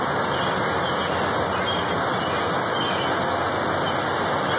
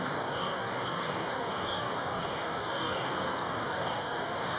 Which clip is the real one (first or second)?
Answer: first